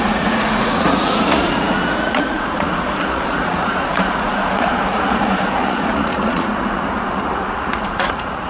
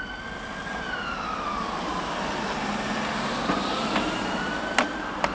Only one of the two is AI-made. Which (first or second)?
first